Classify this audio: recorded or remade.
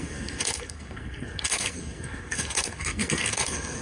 remade